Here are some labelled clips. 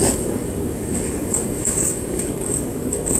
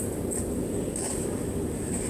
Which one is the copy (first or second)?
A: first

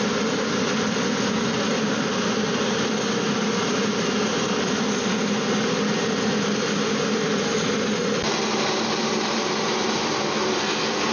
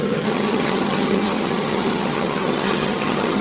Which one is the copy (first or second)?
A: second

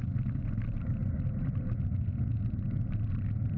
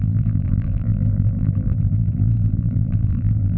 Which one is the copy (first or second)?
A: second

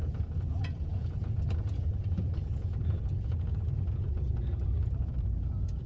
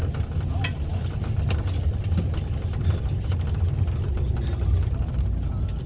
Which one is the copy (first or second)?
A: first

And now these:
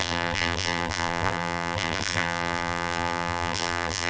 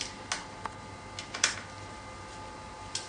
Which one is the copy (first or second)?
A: first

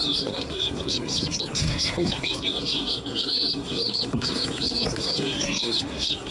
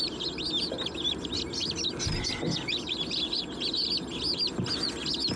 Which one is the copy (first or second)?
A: first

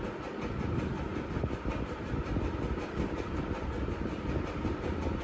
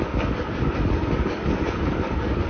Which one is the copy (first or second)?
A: second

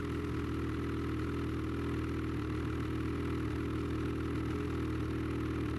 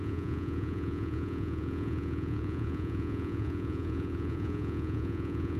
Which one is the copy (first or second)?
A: second